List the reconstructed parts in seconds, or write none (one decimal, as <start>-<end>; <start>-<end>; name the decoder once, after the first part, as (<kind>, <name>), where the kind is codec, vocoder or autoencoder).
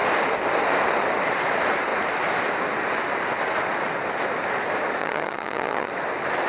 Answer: 5.0-5.9 (vocoder, HiFi-GAN)